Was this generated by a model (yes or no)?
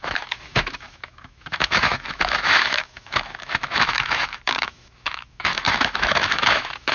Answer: yes